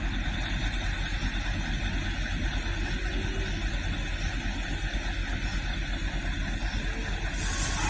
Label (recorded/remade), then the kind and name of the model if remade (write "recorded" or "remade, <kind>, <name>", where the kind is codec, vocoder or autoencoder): recorded